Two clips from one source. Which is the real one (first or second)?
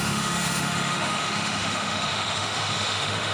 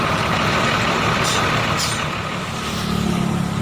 second